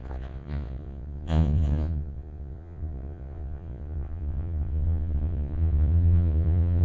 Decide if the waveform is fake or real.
fake